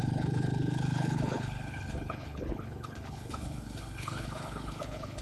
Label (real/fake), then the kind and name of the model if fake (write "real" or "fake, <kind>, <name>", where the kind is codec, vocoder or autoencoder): fake, codec, HILCodec